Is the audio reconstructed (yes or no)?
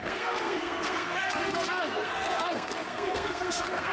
yes